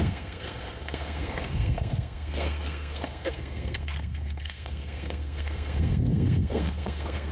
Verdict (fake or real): fake